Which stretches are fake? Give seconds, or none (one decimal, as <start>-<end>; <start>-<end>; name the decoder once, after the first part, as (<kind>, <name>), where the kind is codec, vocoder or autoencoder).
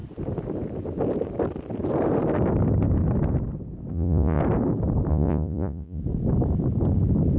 3.9-4.4 (vocoder, Vocos); 5.1-6.0